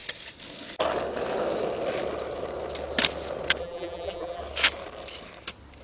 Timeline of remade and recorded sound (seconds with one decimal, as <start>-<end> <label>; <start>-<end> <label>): 0.0-3.6 recorded; 3.6-4.4 remade; 4.4-5.8 recorded